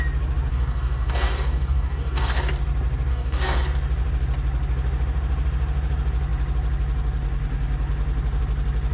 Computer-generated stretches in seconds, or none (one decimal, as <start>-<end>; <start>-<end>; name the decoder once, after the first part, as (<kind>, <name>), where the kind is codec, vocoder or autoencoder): 0.5-2.4 (codec, DAC); 3.1-3.6